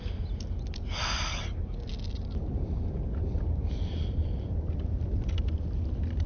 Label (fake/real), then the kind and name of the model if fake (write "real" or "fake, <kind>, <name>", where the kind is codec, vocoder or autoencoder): real